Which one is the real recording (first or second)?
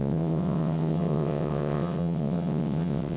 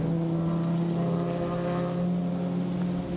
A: second